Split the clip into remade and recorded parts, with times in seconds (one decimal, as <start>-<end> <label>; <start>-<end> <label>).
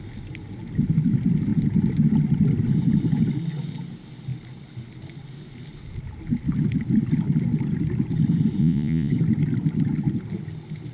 0.0-8.6 recorded; 8.6-9.1 remade; 9.1-10.9 recorded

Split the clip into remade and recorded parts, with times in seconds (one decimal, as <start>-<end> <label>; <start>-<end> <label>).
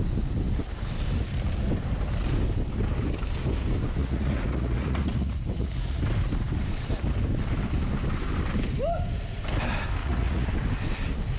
0.0-4.0 recorded; 4.0-6.0 remade; 6.0-10.0 recorded; 10.0-10.5 remade; 10.5-11.4 recorded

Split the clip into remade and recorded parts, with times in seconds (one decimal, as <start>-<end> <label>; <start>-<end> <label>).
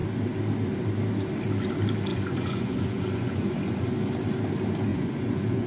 0.0-2.1 recorded; 2.1-3.9 remade; 3.9-4.9 recorded; 4.9-5.7 remade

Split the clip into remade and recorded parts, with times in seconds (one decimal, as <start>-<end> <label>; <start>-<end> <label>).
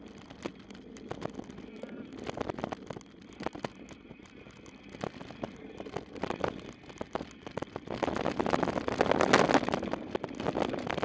0.0-11.0 recorded